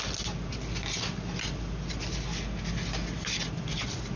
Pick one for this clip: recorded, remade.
recorded